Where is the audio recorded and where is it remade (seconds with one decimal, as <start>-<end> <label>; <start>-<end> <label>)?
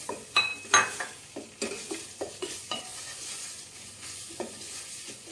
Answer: 0.0-0.5 remade; 0.5-2.4 recorded; 2.4-5.3 remade